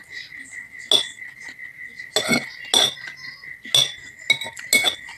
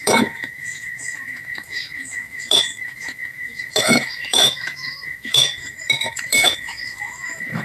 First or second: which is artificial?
second